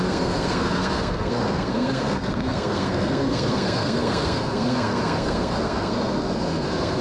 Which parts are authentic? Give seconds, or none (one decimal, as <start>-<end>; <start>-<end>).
none